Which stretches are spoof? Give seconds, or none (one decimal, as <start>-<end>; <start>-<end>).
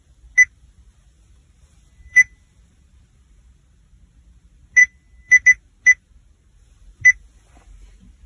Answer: 1.4-3.1; 4.8-5.3